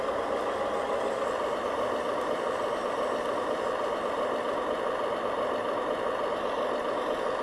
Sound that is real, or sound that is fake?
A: real